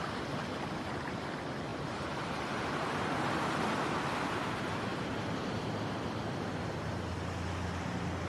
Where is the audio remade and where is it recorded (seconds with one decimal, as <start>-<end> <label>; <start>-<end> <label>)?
0.0-1.7 recorded; 1.7-3.5 remade; 3.5-4.9 recorded; 4.9-5.9 remade; 5.9-8.3 recorded